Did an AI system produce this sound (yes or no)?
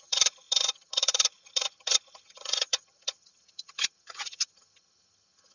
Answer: yes